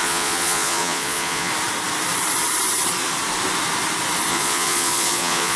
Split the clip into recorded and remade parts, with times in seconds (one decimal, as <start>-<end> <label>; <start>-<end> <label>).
0.0-1.5 remade; 1.5-4.3 recorded; 4.3-5.6 remade